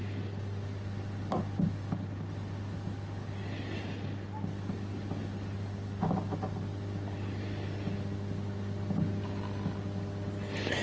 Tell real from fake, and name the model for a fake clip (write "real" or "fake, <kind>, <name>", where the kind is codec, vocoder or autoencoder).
real